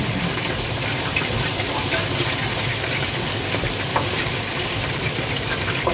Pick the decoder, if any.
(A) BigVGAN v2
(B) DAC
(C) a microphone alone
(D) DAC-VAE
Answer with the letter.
A